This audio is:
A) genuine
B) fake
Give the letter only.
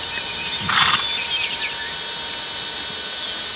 A